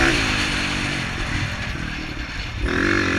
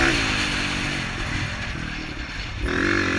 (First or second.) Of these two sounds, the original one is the second